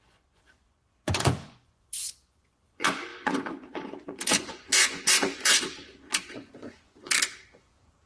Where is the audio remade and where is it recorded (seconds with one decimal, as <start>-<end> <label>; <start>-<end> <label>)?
0.0-8.1 remade